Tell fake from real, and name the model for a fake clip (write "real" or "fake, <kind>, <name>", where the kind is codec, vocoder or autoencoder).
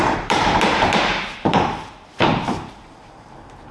fake, vocoder, BigVGAN v2